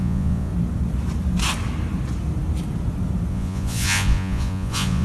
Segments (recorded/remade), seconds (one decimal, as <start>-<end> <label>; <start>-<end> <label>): 0.0-0.5 remade; 0.5-3.3 recorded; 3.3-5.0 remade